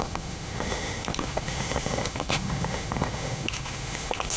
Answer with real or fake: fake